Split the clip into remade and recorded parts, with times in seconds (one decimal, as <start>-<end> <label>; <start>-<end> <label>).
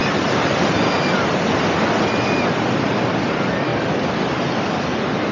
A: 0.0-3.2 recorded; 3.2-5.3 remade